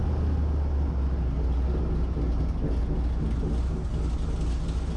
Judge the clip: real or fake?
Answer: real